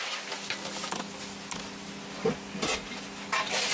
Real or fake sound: real